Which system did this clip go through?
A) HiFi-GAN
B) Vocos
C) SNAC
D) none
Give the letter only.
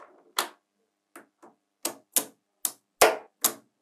D